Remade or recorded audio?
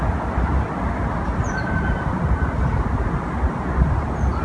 recorded